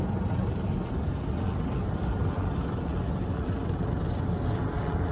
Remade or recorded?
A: recorded